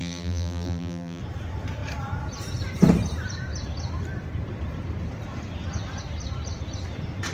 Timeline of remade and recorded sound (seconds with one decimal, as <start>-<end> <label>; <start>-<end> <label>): 0.0-1.2 remade; 1.2-7.3 recorded